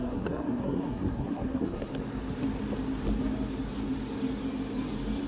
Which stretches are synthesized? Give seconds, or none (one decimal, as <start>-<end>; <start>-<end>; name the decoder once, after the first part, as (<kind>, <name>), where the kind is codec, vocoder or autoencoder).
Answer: 0.0-1.9 (codec, SNAC)